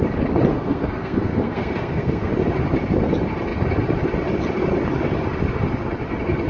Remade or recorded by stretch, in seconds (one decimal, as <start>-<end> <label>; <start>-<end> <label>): 0.0-0.5 recorded; 0.5-2.3 remade; 2.3-6.5 recorded